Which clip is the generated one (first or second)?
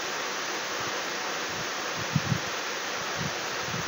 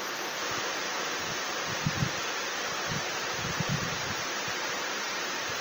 second